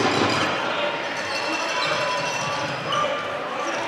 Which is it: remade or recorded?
recorded